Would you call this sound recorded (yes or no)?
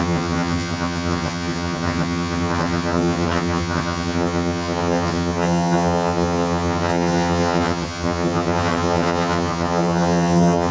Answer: no